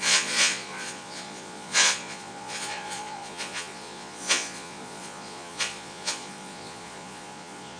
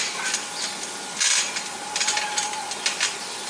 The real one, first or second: second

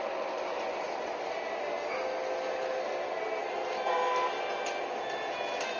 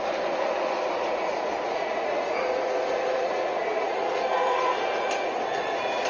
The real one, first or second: first